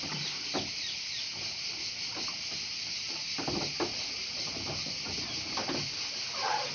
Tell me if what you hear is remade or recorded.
recorded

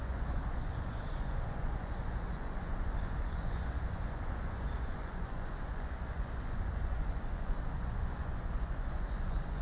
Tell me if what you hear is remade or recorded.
remade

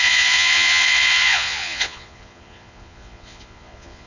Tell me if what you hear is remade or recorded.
remade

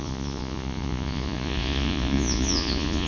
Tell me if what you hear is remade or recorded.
remade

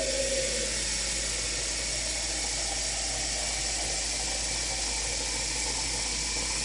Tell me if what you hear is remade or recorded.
recorded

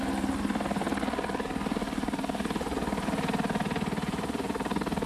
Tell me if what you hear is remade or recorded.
recorded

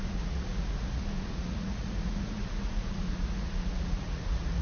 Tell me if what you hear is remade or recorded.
remade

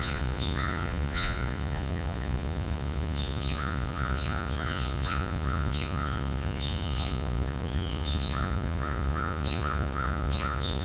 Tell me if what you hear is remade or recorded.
remade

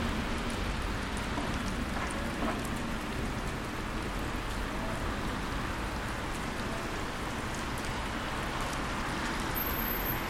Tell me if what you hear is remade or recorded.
recorded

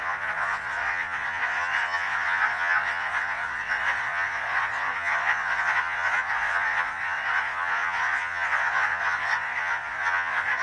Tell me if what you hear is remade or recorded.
remade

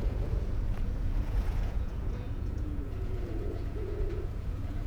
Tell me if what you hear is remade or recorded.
remade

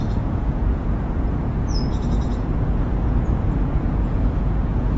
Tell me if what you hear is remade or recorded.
remade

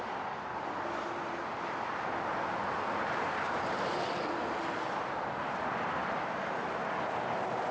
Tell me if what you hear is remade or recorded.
recorded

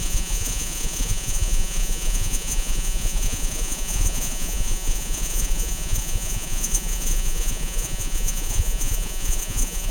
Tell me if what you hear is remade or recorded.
remade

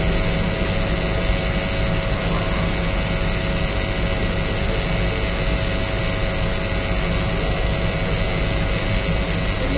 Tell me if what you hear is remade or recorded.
recorded